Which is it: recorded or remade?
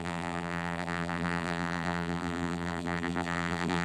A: remade